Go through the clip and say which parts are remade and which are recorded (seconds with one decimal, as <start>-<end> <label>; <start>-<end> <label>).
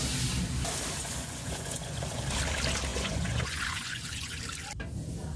0.0-1.0 recorded; 1.0-2.2 remade; 2.2-2.9 recorded; 2.9-4.4 remade; 4.4-5.4 recorded